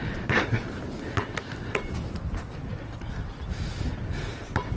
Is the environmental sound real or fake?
real